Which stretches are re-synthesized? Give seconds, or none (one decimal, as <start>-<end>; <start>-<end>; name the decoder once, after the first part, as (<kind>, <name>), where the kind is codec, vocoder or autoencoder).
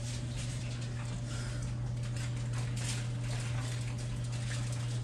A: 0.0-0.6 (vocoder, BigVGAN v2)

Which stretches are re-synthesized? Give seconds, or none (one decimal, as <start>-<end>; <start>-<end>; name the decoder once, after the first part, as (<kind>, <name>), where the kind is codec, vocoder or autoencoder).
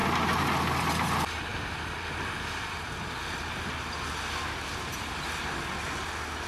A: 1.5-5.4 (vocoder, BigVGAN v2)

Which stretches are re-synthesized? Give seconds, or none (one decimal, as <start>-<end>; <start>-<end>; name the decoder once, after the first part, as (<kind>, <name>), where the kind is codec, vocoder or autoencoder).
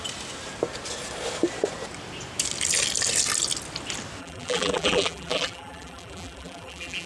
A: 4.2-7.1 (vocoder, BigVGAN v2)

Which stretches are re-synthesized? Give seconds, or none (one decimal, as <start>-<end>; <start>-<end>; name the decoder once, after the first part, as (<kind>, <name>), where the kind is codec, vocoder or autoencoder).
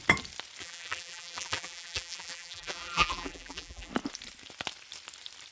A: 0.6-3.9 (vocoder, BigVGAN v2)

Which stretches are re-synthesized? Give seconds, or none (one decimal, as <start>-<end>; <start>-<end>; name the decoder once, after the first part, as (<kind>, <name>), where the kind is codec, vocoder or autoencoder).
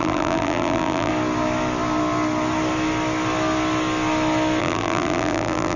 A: 0.0-1.1 (vocoder, BigVGAN v2); 4.6-5.8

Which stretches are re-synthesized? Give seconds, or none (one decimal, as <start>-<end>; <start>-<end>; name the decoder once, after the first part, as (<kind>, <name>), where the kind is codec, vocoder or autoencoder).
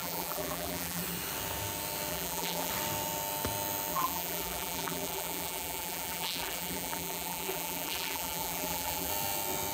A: 0.0-1.0 (vocoder, BigVGAN v2); 2.1-2.7; 3.9-9.1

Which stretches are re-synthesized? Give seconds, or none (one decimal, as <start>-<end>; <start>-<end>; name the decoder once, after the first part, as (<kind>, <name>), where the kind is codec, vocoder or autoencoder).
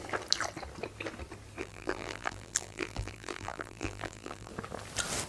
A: 1.6-4.5 (vocoder, BigVGAN v2)